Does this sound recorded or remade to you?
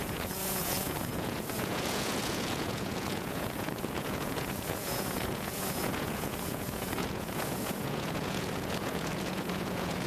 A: remade